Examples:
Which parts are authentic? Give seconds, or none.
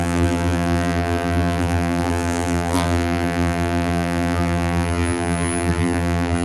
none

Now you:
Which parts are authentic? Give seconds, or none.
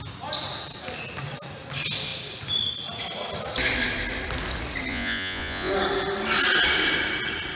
0.0-4.9; 5.7-7.6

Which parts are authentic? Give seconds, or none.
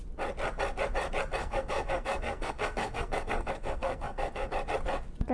0.0-1.4; 4.5-5.3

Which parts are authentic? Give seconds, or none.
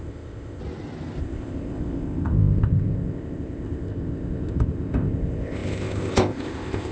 0.6-1.2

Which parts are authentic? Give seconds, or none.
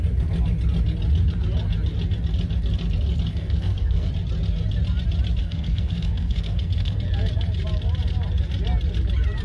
0.0-3.3; 4.1-5.4; 7.0-9.4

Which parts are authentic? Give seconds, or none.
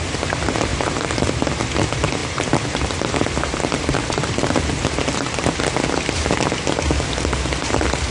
0.0-0.7; 1.3-2.2; 5.5-8.1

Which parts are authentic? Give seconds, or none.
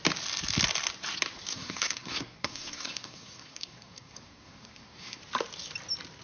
0.0-1.5; 5.2-6.2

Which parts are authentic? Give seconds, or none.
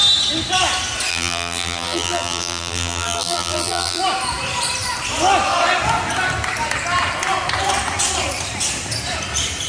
0.0-1.1; 4.0-9.7